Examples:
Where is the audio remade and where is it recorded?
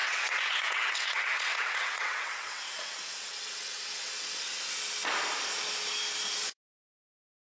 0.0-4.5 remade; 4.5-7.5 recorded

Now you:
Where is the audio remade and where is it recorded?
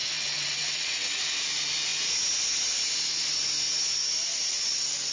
0.0-1.2 remade; 1.2-5.1 recorded